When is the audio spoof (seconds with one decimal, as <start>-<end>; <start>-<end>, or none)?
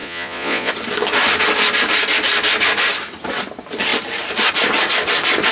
0.0-0.7